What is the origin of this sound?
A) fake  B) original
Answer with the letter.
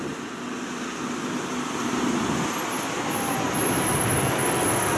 B